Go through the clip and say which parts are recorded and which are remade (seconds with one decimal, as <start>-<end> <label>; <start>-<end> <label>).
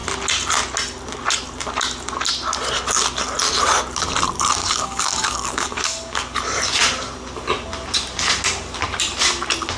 0.0-4.6 recorded; 4.6-6.6 remade; 6.6-9.8 recorded